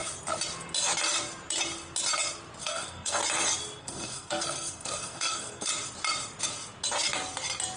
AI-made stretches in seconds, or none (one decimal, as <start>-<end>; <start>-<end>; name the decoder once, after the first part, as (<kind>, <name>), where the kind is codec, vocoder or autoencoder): 2.6-3.2 (codec, SNAC); 3.8-5.7